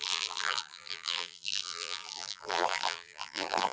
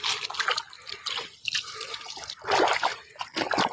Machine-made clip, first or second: first